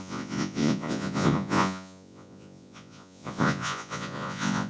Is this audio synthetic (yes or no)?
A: yes